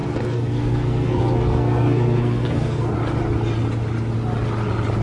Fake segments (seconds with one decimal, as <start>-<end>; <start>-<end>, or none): 0.0-2.9